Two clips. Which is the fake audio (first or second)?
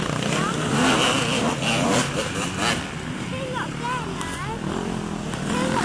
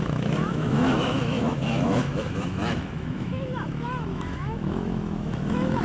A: second